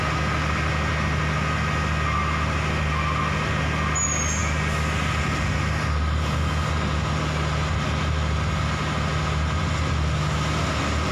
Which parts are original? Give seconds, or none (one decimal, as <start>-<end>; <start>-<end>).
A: 0.0-11.1